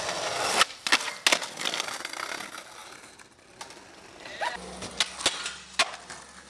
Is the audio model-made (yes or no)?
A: no